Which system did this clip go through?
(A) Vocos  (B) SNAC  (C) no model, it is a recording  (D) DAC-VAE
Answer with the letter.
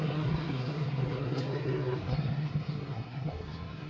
B